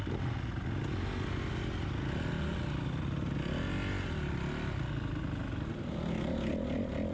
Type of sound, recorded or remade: recorded